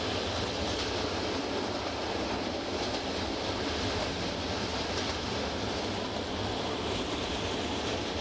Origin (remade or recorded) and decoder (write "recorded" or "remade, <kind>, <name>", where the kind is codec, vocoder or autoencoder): recorded